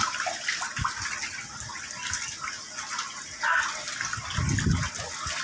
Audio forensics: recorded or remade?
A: recorded